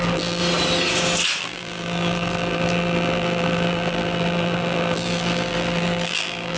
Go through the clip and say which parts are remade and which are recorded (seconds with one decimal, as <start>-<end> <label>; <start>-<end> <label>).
0.0-0.4 remade; 0.4-1.4 recorded; 1.4-6.6 remade